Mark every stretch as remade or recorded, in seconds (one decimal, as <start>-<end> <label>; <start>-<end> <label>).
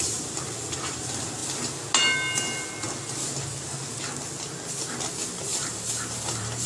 0.0-1.4 remade; 1.4-5.4 recorded; 5.4-6.7 remade